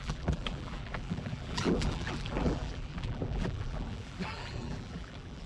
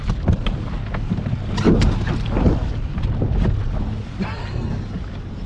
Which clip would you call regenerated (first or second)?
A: first